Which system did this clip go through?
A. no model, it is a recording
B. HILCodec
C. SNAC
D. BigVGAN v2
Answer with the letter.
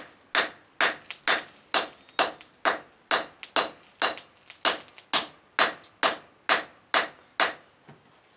A